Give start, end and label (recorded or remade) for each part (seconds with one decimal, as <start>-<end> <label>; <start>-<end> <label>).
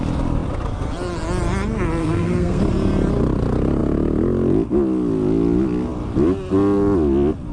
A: 0.0-2.0 recorded; 2.0-2.6 remade; 2.6-7.5 recorded